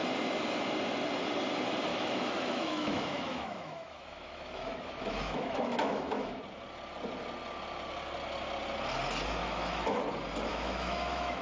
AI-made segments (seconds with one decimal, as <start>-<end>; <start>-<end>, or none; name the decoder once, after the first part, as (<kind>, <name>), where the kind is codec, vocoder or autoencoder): 1.9-6.4 (autoencoder, DAC-VAE); 9.4-10.0; 10.5-11.4